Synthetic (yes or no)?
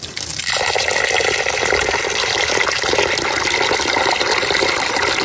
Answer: no